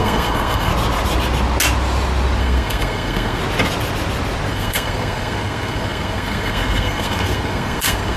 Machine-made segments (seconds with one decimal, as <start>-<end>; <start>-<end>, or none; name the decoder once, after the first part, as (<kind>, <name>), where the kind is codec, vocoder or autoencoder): 0.0-0.7 (codec, SNAC); 2.4-3.4; 4.5-8.2